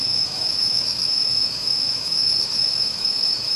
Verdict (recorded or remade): remade